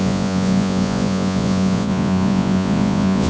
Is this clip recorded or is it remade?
remade